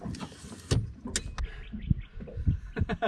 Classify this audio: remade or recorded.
recorded